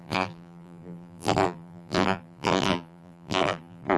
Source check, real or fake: fake